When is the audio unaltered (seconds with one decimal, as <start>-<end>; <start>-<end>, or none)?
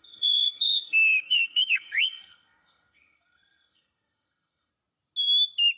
4.7-5.8